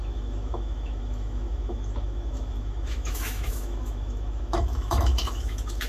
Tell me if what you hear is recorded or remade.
remade